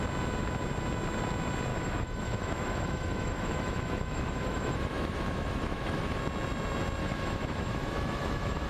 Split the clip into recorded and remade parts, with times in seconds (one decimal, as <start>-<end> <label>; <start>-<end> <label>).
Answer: 0.0-1.7 recorded; 1.7-6.2 remade; 6.2-7.0 recorded; 7.0-8.7 remade

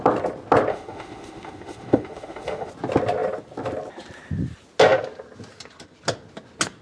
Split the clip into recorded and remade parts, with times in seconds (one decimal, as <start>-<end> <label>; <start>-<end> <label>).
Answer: 0.0-0.7 recorded; 0.7-2.7 remade; 2.7-6.8 recorded

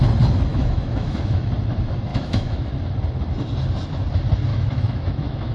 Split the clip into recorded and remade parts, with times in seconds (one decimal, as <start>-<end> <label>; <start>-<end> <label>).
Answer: 0.0-0.5 recorded; 0.5-1.4 remade; 1.4-2.1 recorded; 2.1-2.7 remade; 2.7-4.5 recorded; 4.5-5.5 remade

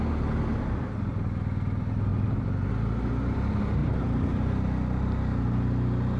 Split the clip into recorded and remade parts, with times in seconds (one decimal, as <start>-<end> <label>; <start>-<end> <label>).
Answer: 0.0-6.2 recorded